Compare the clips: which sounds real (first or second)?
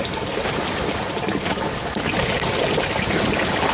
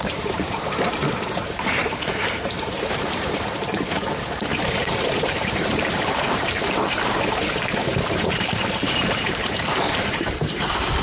first